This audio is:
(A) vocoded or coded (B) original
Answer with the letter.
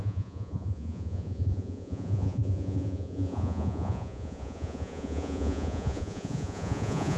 A